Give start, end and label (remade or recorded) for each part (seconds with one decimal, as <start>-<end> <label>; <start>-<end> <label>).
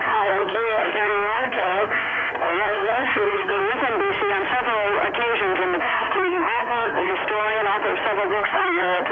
0.0-3.6 remade; 3.6-5.8 recorded; 5.8-7.1 remade; 7.1-8.3 recorded; 8.3-9.1 remade